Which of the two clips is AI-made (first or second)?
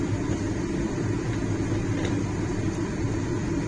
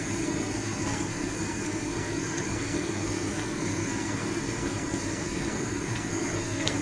second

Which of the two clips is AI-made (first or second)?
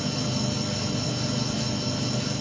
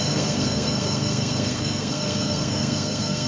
second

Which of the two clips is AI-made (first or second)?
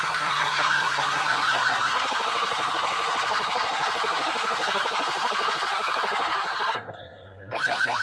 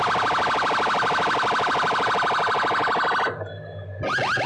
first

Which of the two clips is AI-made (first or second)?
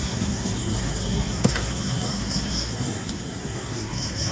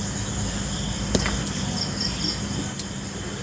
first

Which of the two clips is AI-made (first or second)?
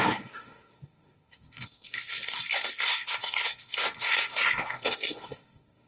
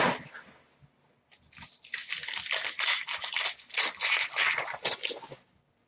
first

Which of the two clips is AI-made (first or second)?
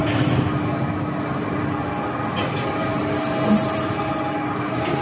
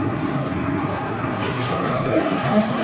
second